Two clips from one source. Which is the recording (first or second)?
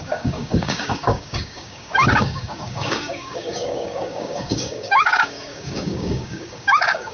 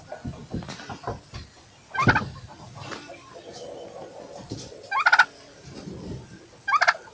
second